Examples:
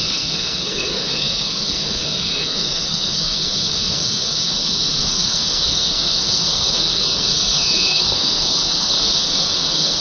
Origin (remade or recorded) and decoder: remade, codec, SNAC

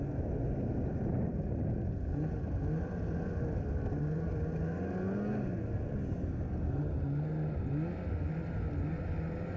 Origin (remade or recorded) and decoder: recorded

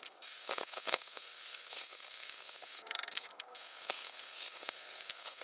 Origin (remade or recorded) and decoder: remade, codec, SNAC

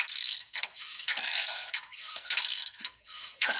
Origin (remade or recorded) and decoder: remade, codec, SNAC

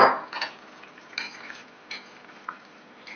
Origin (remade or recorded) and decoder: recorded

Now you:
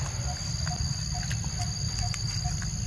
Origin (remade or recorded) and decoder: recorded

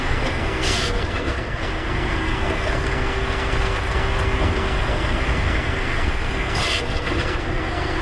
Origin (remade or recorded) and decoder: remade, codec, SNAC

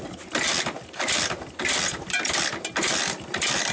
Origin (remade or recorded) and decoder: recorded